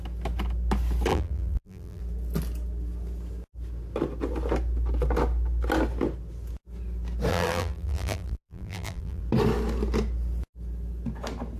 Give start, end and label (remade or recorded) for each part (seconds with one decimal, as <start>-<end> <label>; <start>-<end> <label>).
0.0-1.1 recorded; 1.1-2.0 remade; 2.0-7.3 recorded; 7.3-9.2 remade; 9.2-11.6 recorded